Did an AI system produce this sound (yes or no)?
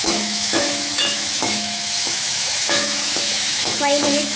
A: yes